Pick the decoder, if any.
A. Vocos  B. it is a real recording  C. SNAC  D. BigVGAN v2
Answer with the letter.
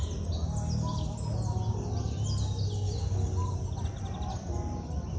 B